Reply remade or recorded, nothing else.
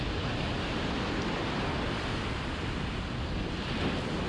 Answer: recorded